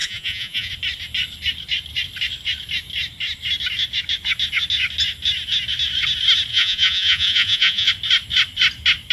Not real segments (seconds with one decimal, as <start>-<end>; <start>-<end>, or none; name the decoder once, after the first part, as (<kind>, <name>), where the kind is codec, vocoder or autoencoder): 0.0-0.7 (vocoder, Vocos); 6.5-7.9